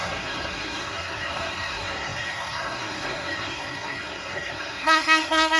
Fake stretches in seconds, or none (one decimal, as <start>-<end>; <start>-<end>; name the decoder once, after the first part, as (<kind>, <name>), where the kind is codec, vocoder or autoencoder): 0.0-5.6 (codec, SNAC)